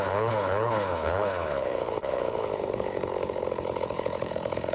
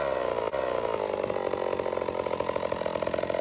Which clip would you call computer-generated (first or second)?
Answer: first